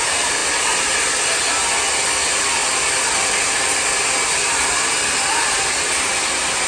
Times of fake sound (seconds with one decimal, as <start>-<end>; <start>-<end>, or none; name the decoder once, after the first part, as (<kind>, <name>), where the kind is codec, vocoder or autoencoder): none